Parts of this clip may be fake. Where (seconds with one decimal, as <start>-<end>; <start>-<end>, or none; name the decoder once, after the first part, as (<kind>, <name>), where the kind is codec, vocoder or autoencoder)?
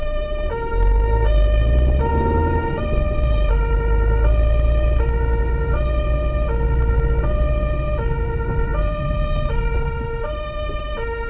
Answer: 2.1-2.8 (codec, DAC)